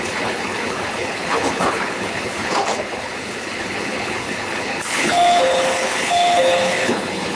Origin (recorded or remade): remade